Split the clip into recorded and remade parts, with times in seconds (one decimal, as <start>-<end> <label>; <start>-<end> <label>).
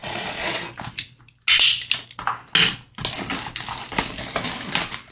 0.0-0.6 remade; 0.6-5.1 recorded